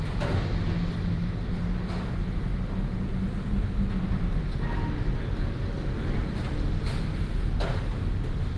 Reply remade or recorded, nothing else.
recorded